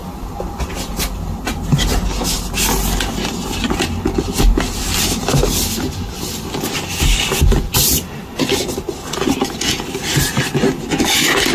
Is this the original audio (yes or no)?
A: yes